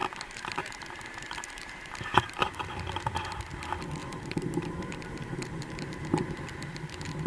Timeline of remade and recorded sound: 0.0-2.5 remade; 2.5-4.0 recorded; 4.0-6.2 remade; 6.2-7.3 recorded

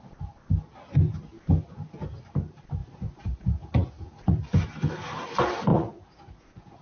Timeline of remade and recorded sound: 0.0-2.8 recorded; 2.8-4.3 remade; 4.3-5.7 recorded; 5.7-6.8 remade

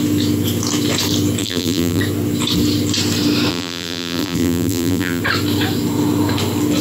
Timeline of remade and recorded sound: 0.0-1.4 recorded; 1.4-2.0 remade; 2.0-3.5 recorded; 3.5-5.2 remade; 5.2-6.8 recorded

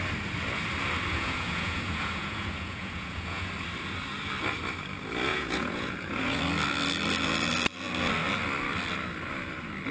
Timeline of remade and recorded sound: 0.0-1.1 recorded; 1.1-3.5 remade; 3.5-5.3 recorded; 5.3-6.4 remade; 6.4-9.9 recorded

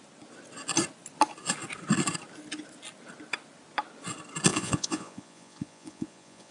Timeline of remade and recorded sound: 0.0-4.5 recorded; 4.5-6.5 remade